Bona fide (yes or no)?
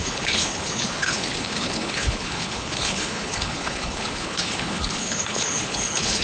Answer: no